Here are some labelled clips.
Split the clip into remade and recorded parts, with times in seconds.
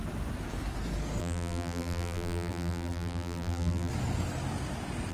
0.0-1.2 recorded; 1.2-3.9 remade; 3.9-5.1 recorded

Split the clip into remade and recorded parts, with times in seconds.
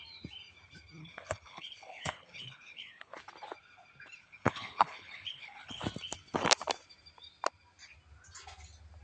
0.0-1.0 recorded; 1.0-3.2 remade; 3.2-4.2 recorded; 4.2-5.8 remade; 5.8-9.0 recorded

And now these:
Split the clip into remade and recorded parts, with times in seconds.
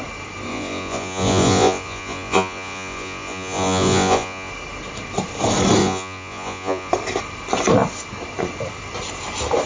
0.0-0.5 recorded; 0.5-4.5 remade; 4.5-5.8 recorded; 5.8-6.9 remade; 6.9-9.7 recorded